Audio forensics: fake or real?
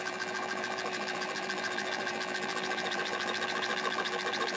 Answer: fake